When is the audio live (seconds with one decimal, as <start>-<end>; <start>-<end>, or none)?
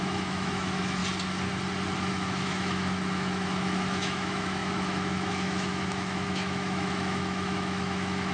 1.0-2.1